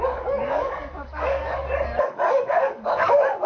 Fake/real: fake